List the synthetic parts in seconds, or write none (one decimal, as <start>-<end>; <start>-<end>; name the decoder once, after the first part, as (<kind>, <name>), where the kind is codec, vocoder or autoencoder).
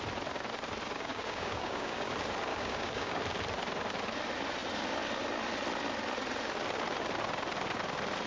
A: 1.1-2.1 (codec, DAC); 2.5-3.2